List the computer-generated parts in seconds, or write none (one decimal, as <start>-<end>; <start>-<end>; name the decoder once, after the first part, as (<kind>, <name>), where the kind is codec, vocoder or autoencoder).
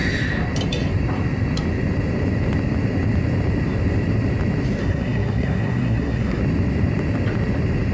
4.8-6.4 (codec, SNAC)